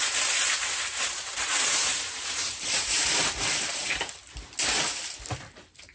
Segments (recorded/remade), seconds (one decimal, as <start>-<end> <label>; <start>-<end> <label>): 0.0-4.2 remade; 4.2-5.4 recorded; 5.4-5.9 remade